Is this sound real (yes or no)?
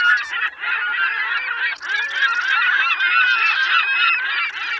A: yes